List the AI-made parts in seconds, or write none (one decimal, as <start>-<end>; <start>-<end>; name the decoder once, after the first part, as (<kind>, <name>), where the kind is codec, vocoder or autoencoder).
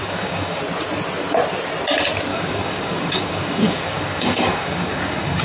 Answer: 0.0-0.6 (codec, DAC); 2.3-5.4